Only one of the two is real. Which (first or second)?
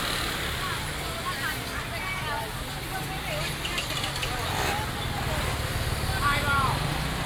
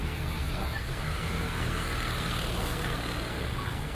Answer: first